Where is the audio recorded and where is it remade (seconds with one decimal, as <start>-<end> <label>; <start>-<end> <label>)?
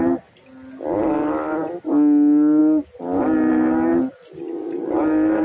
0.0-5.4 recorded